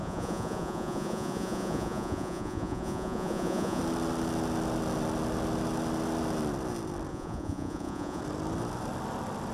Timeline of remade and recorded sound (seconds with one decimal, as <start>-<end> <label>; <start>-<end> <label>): 0.0-3.8 remade; 3.8-7.1 recorded; 7.1-8.2 remade; 8.2-9.5 recorded